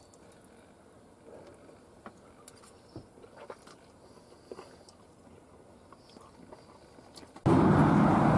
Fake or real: real